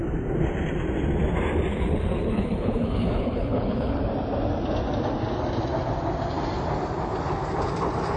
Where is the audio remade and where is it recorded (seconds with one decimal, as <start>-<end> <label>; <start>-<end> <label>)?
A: 0.0-1.7 recorded; 1.7-4.0 remade; 4.0-8.2 recorded